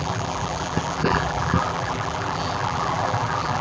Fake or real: fake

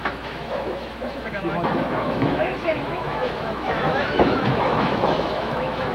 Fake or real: fake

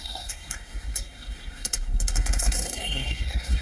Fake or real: fake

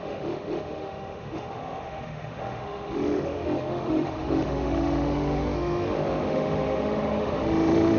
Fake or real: fake